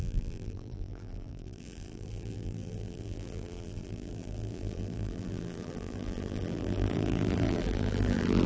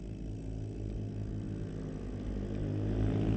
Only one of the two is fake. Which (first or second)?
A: first